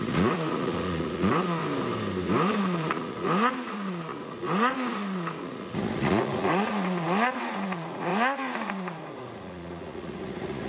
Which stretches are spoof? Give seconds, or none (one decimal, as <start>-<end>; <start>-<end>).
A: 0.0-1.6; 2.6-10.7